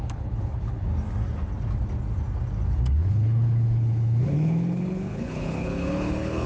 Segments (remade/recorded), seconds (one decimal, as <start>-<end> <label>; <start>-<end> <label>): 0.0-0.9 remade; 0.9-2.7 recorded; 2.7-6.5 remade